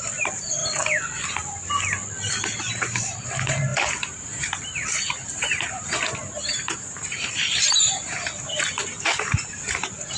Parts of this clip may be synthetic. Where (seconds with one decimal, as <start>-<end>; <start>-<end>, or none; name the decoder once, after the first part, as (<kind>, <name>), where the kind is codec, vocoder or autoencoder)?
0.0-0.6 (vocoder, BigVGAN v2); 2.6-10.2